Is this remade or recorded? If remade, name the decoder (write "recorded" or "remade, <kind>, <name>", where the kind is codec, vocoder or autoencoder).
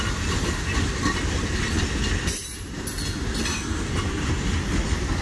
recorded